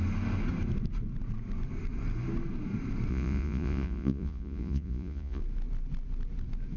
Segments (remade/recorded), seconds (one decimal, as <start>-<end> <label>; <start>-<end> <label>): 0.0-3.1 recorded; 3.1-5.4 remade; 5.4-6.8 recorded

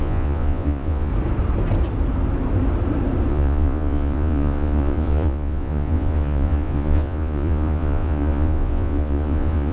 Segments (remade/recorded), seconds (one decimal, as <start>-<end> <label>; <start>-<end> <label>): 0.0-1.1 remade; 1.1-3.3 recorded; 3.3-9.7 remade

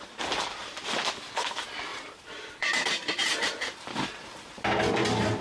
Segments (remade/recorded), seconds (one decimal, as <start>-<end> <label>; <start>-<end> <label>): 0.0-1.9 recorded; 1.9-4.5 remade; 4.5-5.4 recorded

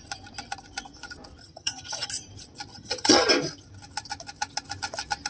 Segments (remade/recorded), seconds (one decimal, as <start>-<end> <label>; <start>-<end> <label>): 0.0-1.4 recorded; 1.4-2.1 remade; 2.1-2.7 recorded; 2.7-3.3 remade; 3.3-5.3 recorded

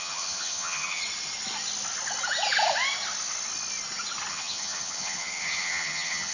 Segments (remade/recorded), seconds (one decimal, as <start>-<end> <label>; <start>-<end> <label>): 0.0-1.0 remade; 1.0-4.3 recorded; 4.3-6.3 remade

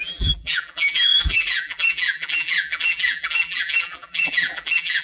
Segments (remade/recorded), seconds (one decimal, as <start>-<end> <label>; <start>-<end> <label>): 0.0-5.0 remade

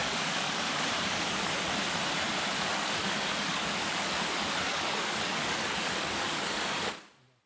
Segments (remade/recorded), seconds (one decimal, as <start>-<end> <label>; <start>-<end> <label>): 0.0-1.5 remade; 1.5-2.7 recorded; 2.7-6.9 remade; 6.9-7.5 recorded

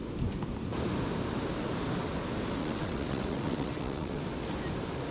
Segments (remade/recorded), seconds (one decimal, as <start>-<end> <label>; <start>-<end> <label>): 0.0-2.6 recorded; 2.6-4.2 remade; 4.2-5.1 recorded